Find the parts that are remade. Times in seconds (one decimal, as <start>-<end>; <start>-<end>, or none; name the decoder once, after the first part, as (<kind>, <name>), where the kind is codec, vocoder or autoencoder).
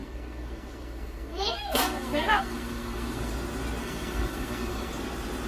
0.0-3.3 (codec, SNAC); 3.8-4.9